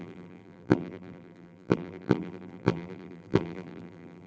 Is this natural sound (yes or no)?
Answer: no